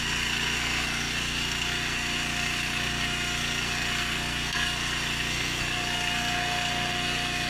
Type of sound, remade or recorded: remade